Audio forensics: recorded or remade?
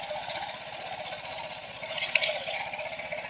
remade